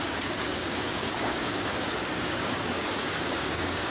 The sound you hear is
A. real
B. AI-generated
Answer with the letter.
B